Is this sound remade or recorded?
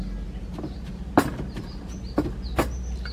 recorded